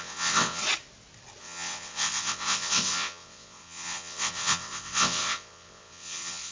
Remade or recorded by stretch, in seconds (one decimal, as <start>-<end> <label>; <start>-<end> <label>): 0.0-0.6 remade; 0.6-1.4 recorded; 1.4-6.5 remade